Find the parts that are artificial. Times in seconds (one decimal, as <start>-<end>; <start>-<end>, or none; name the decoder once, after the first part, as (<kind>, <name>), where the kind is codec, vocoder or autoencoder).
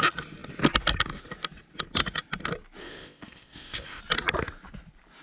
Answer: 2.8-4.0 (codec, ZipCodec)